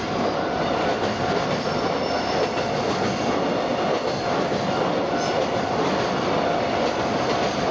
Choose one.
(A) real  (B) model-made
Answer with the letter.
A